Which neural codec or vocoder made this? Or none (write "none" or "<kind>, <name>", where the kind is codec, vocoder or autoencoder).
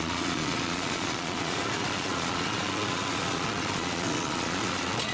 vocoder, Vocos